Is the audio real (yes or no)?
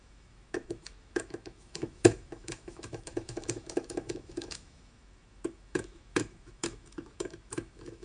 no